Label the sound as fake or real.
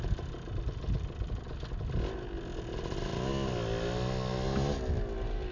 real